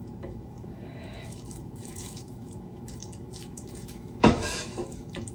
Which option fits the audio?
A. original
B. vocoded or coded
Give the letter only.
B